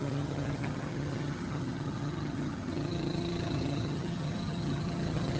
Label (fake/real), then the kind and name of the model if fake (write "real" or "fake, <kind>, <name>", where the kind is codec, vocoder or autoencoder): fake, vocoder, HiFi-GAN